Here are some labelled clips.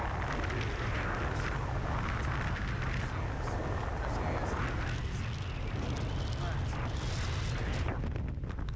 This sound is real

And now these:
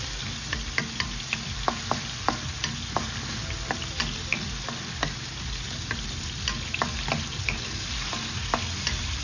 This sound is real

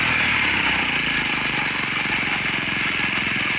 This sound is real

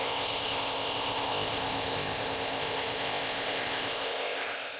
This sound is fake